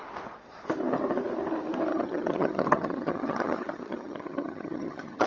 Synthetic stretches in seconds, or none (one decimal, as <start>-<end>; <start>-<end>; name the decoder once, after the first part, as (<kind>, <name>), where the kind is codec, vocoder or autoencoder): 1.9-5.3 (vocoder, HiFi-GAN)